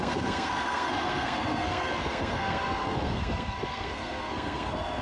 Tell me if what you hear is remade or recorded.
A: remade